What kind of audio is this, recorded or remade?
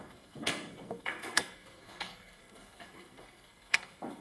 remade